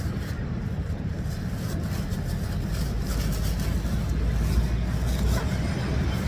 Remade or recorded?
recorded